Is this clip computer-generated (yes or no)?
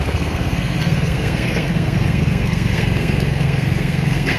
yes